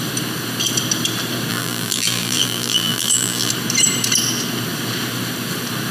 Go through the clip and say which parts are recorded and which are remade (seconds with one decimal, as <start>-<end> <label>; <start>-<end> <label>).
0.0-1.5 recorded; 1.5-3.5 remade; 3.5-5.9 recorded